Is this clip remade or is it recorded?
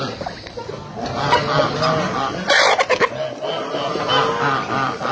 recorded